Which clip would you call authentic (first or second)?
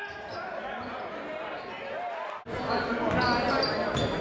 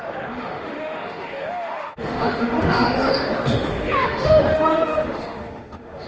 first